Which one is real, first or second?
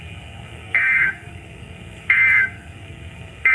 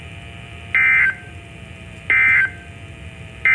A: second